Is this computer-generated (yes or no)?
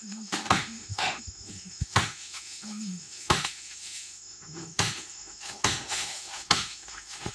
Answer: yes